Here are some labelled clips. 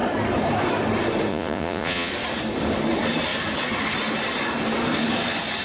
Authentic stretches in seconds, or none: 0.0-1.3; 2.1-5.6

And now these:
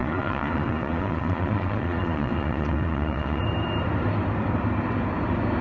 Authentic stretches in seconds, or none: 3.4-5.6